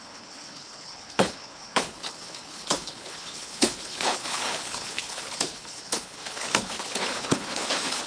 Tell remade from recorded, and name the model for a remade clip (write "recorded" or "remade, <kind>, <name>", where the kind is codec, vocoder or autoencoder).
remade, codec, HILCodec